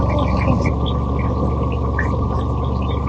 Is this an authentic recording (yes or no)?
yes